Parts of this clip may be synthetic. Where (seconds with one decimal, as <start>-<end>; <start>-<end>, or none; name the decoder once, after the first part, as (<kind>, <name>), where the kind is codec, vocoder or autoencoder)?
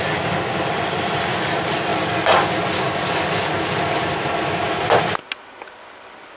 none